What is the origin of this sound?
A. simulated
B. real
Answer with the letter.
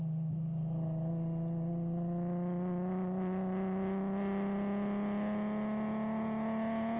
B